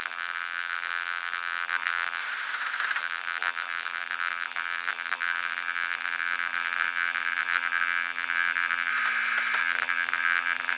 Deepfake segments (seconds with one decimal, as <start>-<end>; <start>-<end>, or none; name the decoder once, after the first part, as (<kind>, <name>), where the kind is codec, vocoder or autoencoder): 0.0-2.2 (vocoder, BigVGAN v2); 3.0-8.9; 9.6-10.8